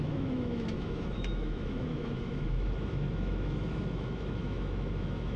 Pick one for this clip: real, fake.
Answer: fake